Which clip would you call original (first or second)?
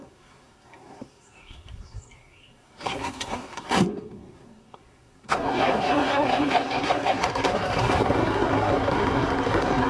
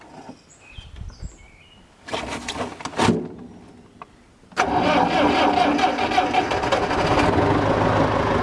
second